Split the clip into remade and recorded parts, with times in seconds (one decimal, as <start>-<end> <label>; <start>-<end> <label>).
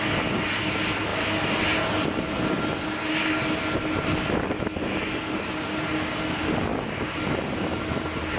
0.0-8.4 recorded